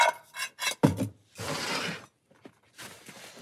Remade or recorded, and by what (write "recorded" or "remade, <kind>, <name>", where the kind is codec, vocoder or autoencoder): recorded